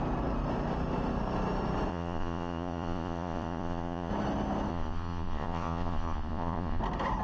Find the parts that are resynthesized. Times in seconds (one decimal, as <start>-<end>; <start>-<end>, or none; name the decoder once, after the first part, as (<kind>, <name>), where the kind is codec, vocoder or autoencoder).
1.9-4.1 (vocoder, Vocos); 4.7-6.8